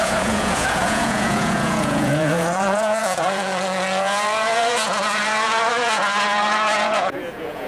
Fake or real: fake